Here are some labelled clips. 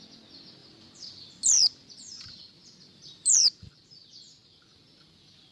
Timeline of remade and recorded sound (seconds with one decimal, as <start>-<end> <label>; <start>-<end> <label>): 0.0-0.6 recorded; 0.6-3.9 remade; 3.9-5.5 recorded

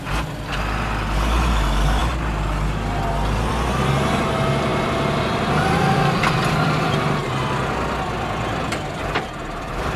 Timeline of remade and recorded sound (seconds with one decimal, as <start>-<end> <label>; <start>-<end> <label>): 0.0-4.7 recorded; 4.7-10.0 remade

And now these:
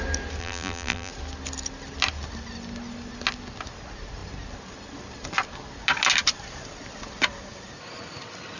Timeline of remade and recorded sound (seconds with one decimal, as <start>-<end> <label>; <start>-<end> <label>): 0.0-0.4 recorded; 0.4-1.1 remade; 1.1-8.6 recorded